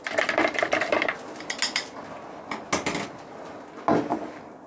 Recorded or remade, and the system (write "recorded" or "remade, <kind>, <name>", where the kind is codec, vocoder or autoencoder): recorded